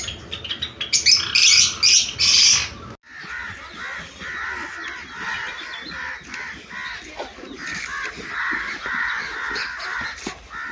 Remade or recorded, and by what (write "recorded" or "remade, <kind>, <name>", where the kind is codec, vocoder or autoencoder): recorded